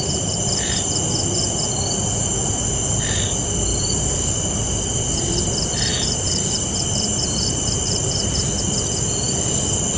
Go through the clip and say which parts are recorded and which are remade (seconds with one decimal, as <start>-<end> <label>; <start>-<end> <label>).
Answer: 0.0-3.7 recorded; 3.7-4.5 remade; 4.5-5.9 recorded; 5.9-8.5 remade; 8.5-10.0 recorded